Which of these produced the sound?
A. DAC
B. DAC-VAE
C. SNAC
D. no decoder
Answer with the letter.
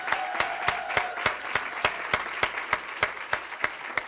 D